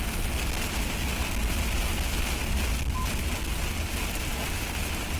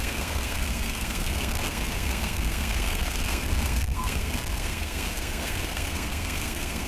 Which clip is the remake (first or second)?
second